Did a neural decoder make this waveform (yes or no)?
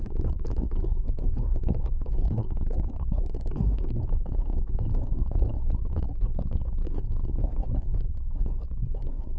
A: yes